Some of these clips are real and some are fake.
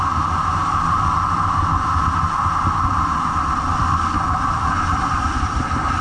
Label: real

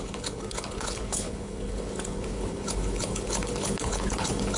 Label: fake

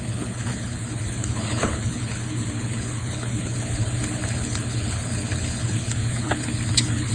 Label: fake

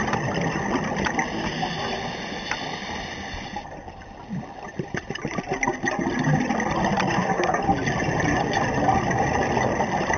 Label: real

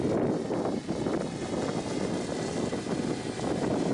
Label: real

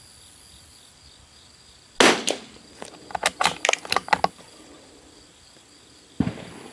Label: real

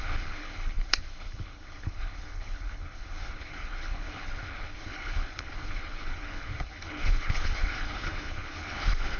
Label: fake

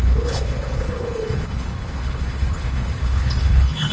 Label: fake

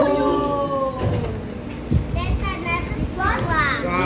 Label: real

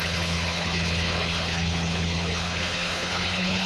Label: fake